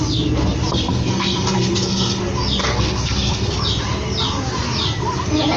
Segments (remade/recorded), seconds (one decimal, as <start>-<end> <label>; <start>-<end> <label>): 0.0-0.7 recorded; 0.7-2.2 remade; 2.2-2.6 recorded; 2.6-3.5 remade; 3.5-5.6 recorded